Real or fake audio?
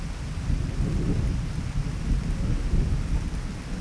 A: real